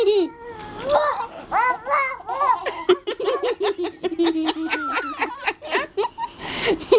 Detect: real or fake real